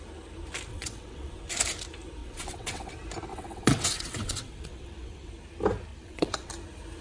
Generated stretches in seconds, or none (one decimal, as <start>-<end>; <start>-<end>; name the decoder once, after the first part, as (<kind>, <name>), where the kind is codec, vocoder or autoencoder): 0.7-1.3 (vocoder, WaveNeXt); 2.2-2.9; 3.3-5.3; 5.9-6.5